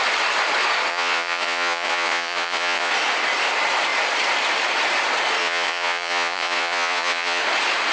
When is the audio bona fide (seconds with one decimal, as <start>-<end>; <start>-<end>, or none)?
0.0-0.9; 2.9-5.4; 7.4-7.9